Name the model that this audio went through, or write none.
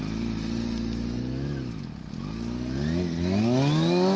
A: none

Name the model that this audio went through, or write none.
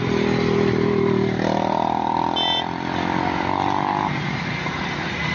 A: none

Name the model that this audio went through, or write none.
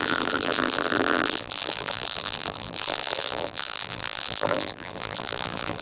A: vocoder, BigVGAN v2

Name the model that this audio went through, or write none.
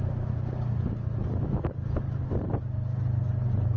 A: none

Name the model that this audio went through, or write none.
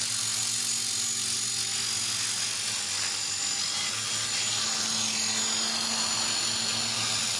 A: none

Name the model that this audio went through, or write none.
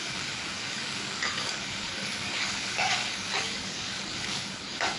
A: codec, DAC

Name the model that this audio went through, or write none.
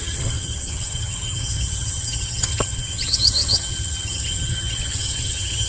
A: vocoder, HiFi-GAN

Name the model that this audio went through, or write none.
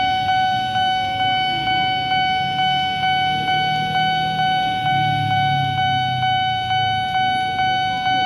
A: none